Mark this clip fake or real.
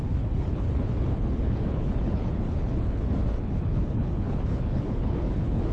fake